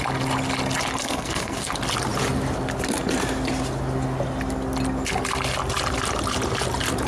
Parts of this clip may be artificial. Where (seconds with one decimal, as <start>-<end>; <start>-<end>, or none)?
1.0-1.7